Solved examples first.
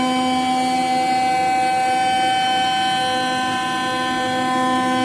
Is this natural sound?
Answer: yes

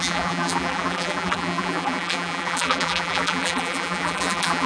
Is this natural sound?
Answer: no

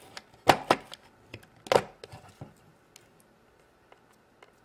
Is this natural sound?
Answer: yes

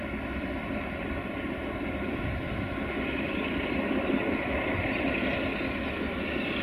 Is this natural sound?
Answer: yes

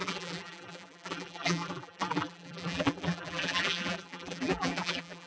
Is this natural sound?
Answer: no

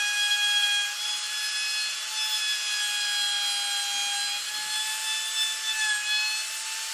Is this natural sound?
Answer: yes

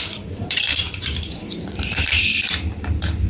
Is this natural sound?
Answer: no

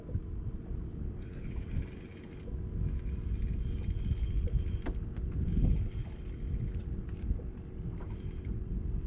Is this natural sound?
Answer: yes